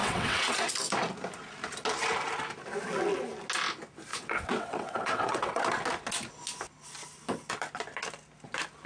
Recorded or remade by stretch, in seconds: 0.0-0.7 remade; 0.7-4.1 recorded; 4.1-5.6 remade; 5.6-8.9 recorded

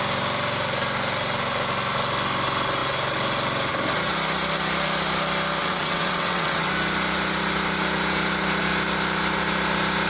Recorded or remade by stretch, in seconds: 0.0-5.6 recorded; 5.6-6.7 remade; 6.7-10.1 recorded

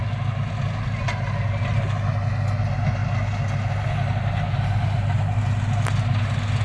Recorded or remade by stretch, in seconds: 0.0-6.6 recorded

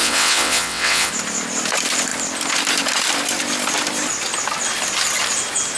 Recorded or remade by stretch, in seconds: 0.0-1.1 remade; 1.1-5.8 recorded

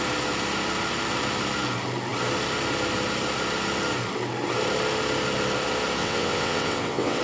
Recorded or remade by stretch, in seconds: 0.0-6.0 recorded; 6.0-7.2 remade

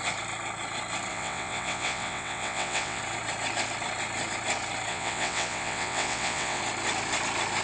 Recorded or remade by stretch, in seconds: 0.0-1.1 recorded; 1.1-3.0 remade; 3.0-4.9 recorded; 4.9-6.6 remade; 6.6-7.6 recorded

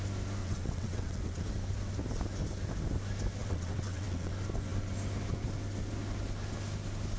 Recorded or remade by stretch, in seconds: 0.0-0.4 recorded; 0.4-1.4 remade; 1.4-3.4 recorded; 3.4-4.3 remade; 4.3-7.2 recorded